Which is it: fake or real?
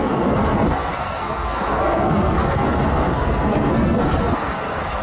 fake